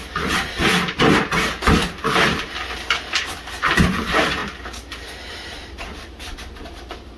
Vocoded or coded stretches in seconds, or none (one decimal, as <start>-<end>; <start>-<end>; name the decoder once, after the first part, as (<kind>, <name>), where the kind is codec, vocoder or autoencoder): 0.0-7.2 (vocoder, BigVGAN v2)